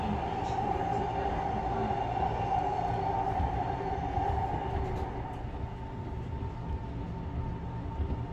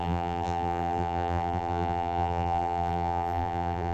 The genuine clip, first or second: first